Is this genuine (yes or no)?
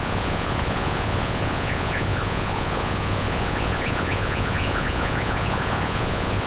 no